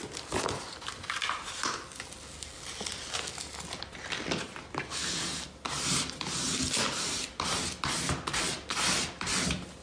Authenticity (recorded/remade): recorded